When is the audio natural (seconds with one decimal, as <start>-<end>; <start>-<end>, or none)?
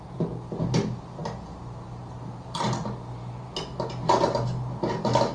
0.0-5.3